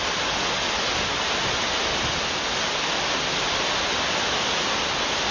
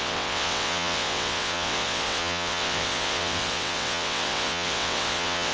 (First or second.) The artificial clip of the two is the second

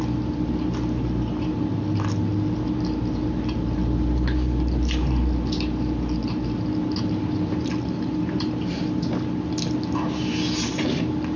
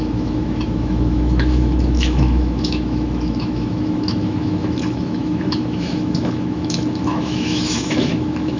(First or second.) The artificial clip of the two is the second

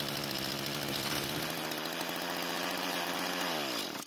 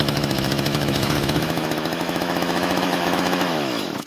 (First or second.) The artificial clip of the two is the second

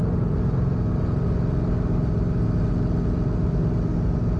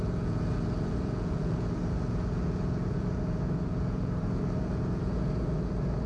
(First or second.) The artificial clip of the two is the second